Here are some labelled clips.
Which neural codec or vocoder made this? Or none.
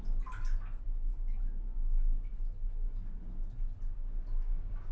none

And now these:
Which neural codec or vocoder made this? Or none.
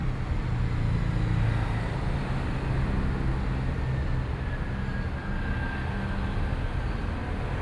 none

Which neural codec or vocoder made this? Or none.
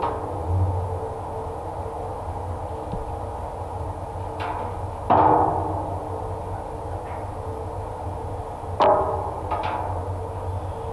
none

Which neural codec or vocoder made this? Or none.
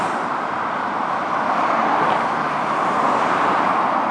none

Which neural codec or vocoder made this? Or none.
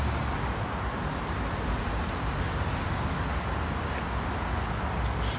none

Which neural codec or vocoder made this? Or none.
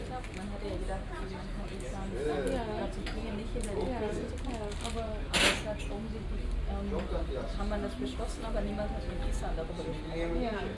none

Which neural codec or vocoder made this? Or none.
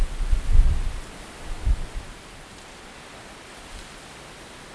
none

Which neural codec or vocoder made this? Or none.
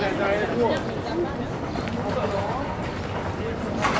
none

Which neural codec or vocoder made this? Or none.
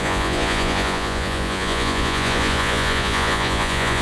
vocoder, Vocos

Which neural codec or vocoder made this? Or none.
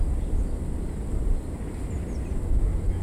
none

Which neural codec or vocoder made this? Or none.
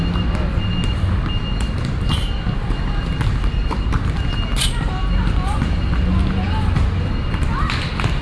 none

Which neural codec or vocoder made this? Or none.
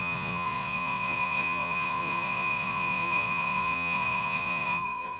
vocoder, Vocos